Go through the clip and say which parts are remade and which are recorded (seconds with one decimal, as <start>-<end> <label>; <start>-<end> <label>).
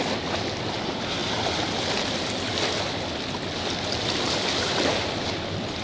0.0-5.8 recorded